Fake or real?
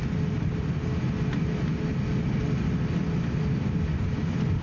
real